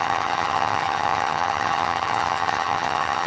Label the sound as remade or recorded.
remade